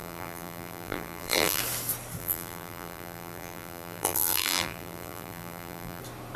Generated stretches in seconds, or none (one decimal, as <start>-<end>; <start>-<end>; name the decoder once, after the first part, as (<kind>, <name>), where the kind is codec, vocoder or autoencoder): 0.0-1.6 (vocoder, BigVGAN v2); 2.2-6.0